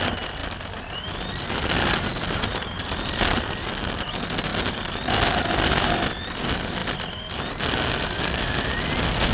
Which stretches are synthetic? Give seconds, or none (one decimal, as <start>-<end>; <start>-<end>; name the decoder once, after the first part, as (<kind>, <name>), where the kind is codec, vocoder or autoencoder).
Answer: none